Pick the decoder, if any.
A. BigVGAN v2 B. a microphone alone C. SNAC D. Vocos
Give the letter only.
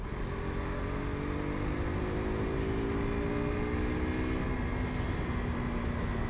B